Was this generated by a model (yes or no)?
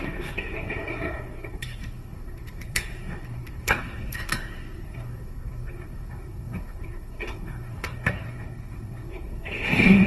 yes